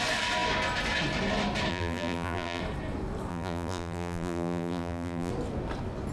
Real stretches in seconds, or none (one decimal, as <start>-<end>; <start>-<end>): 0.0-1.7; 2.6-3.3; 5.3-6.1